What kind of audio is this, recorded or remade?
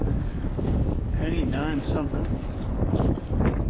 remade